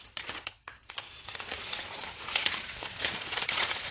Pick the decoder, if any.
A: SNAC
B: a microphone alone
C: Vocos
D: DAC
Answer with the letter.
C